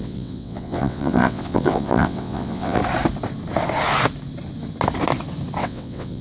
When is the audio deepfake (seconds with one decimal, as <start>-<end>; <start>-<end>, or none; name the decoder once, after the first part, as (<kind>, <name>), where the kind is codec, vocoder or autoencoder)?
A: 0.0-2.8 (vocoder, WaveNeXt); 5.6-6.2